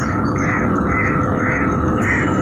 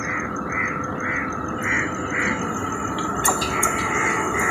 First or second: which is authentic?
second